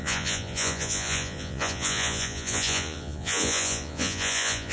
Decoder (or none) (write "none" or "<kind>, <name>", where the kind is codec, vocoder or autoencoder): vocoder, Vocos